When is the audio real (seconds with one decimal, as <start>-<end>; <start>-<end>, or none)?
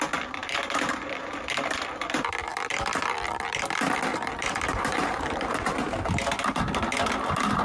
0.0-0.4; 1.2-4.1; 6.6-7.6